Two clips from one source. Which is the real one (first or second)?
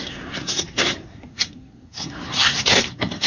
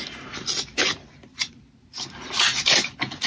second